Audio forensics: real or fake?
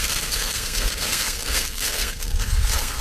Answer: fake